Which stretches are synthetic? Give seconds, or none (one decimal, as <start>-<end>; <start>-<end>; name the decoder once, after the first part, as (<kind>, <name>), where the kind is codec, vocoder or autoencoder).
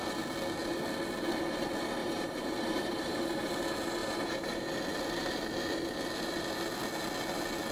2.0-3.5 (vocoder, BigVGAN v2); 4.0-4.7